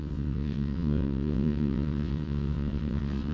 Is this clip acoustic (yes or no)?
no